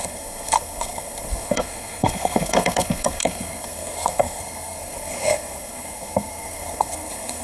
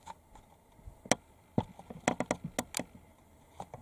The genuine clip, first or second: second